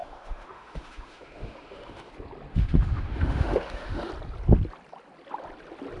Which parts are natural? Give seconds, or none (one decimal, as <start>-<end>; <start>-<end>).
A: 2.1-2.5; 4.1-6.0